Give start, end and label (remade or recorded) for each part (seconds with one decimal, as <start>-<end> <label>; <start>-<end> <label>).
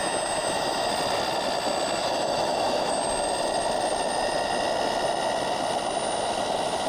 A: 0.0-0.9 remade; 0.9-2.0 recorded; 2.0-3.0 remade; 3.0-6.9 recorded